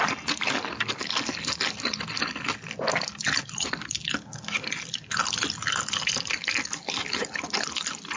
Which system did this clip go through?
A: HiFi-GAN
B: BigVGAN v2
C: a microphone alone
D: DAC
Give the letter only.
C